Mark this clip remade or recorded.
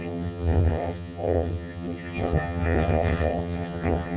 remade